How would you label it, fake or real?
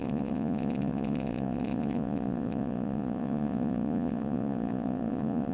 fake